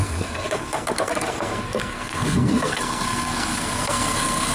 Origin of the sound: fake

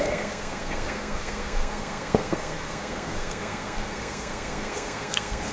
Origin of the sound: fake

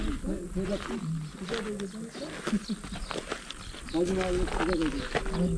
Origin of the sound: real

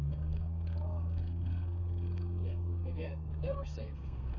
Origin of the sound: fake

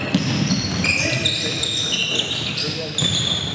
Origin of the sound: real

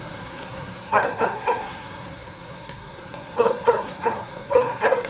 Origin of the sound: fake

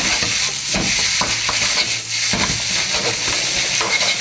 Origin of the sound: real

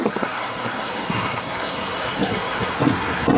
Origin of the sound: fake